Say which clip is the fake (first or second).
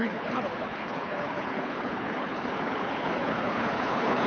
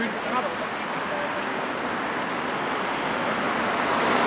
first